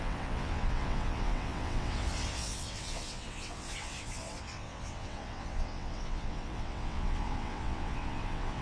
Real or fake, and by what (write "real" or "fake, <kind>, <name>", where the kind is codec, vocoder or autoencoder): fake, vocoder, WaveNeXt